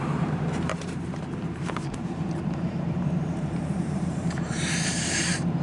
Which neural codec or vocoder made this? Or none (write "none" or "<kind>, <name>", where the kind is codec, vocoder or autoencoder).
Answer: vocoder, BigVGAN v2